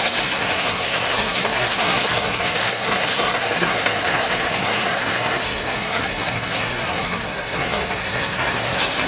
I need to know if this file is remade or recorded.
remade